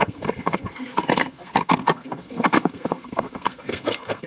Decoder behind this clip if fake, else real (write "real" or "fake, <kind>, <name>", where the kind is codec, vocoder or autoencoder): fake, codec, SNAC